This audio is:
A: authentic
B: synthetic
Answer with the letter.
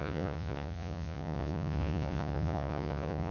B